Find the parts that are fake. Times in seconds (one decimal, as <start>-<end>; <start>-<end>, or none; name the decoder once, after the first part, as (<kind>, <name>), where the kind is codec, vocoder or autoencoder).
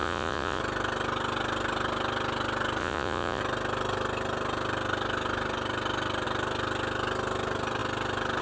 0.0-0.6 (vocoder, Vocos); 2.8-3.4